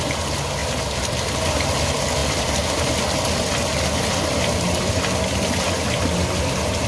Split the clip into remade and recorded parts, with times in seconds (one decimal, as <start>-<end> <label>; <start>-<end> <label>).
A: 0.0-6.9 recorded